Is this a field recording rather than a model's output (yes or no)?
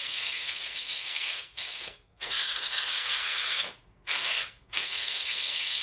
no